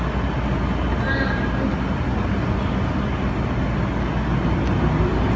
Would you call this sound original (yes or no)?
yes